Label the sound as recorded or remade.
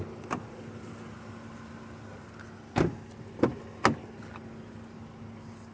recorded